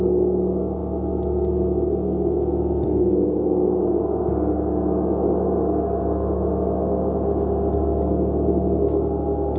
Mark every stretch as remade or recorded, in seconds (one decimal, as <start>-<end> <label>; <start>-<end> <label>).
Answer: 0.0-9.6 recorded